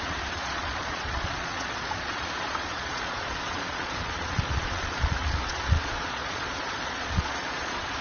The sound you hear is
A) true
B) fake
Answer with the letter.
B